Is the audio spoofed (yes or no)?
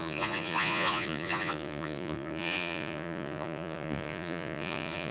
yes